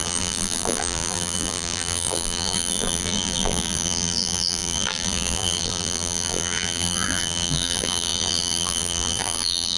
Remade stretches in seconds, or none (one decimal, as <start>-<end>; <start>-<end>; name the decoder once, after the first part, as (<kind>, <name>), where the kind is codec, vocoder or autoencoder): 0.0-9.8 (vocoder, BigVGAN v2)